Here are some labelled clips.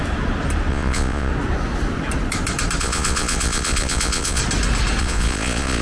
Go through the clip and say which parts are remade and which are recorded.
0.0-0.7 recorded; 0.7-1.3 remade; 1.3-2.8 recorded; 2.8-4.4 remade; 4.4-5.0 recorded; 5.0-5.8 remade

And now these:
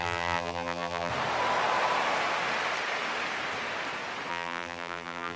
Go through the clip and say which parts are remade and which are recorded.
0.0-1.1 remade; 1.1-4.3 recorded; 4.3-5.4 remade

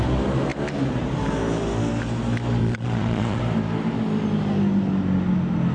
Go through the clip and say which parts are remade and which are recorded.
0.0-2.6 recorded; 2.6-3.4 remade; 3.4-5.7 recorded

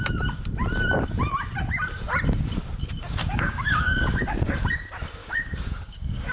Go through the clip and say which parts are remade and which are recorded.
0.0-3.2 recorded; 3.2-4.5 remade; 4.5-5.2 recorded; 5.2-6.3 remade

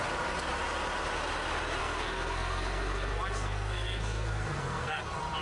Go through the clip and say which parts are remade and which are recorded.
0.0-1.8 recorded; 1.8-5.0 remade; 5.0-5.4 recorded

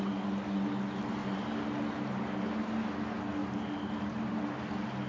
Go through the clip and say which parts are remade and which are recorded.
0.0-5.1 recorded

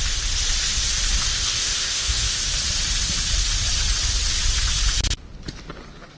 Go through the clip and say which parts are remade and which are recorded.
0.0-1.3 recorded; 1.3-2.4 remade; 2.4-6.2 recorded

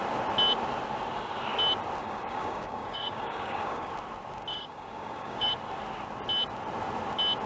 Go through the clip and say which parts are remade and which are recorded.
0.0-2.0 recorded; 2.0-3.9 remade; 3.9-4.5 recorded; 4.5-5.5 remade; 5.5-7.5 recorded